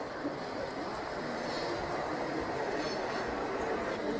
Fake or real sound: real